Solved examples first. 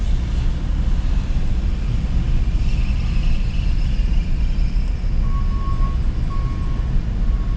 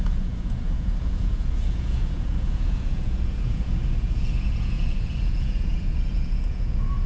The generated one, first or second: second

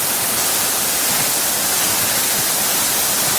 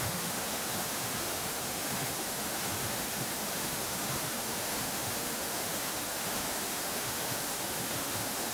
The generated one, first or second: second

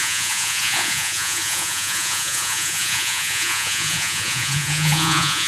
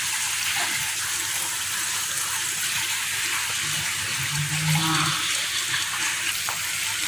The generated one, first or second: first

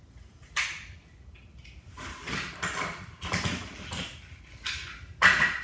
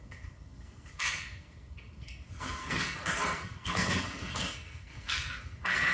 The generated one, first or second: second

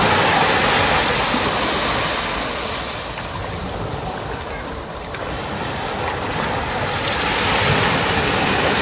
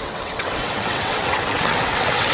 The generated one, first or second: second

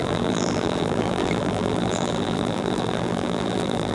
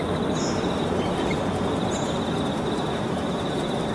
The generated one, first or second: first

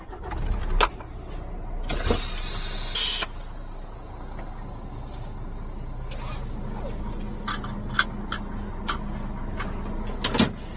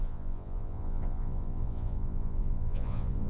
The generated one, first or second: second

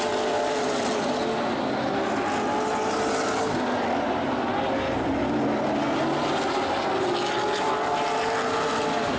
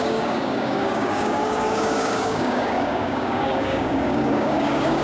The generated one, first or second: second